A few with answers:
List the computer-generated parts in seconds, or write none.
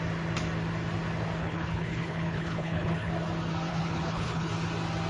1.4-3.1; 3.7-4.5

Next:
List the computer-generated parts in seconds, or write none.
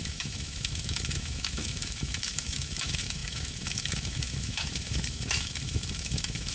0.0-6.5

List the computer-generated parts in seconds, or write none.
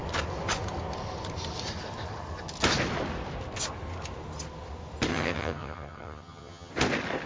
5.1-6.7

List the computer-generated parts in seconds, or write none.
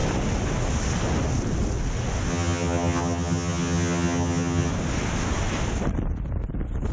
2.3-4.7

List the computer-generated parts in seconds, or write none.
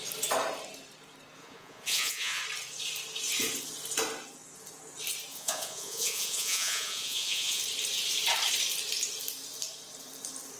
1.4-2.4; 5.3-7.6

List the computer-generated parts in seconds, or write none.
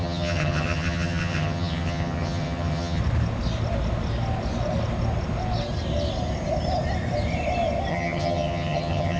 0.0-3.0; 7.9-9.2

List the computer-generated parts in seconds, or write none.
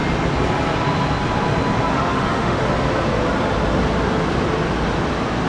1.9-2.6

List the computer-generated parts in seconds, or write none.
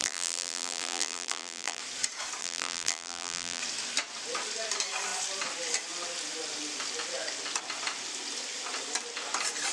0.0-1.8; 2.4-3.6